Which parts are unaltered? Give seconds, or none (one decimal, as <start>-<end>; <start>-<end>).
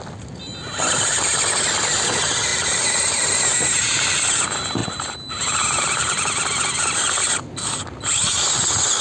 0.0-9.0